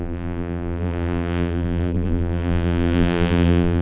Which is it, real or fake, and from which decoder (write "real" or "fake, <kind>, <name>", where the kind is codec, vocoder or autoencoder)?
fake, vocoder, BigVGAN v2